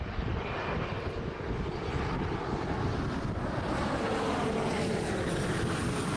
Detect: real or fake real